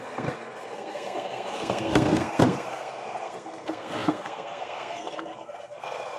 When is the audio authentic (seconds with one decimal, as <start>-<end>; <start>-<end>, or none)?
none